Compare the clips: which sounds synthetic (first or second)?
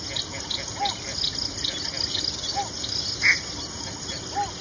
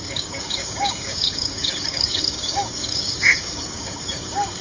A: second